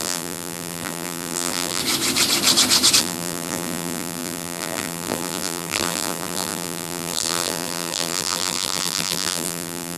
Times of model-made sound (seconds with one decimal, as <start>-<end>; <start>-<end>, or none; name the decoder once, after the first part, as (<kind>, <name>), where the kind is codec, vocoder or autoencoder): 0.0-1.8 (vocoder, BigVGAN v2); 3.0-10.0